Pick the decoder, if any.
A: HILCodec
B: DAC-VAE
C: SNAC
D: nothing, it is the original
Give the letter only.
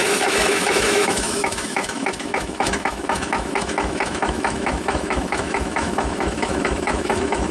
B